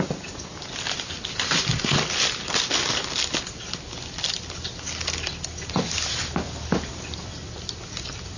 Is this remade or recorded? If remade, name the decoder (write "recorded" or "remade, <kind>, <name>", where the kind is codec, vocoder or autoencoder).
recorded